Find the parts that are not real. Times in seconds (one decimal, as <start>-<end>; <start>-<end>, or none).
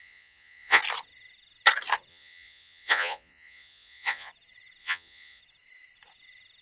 0.0-0.8; 2.1-4.3; 4.8-5.4